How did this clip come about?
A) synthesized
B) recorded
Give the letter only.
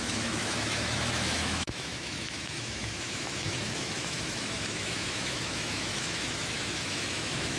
A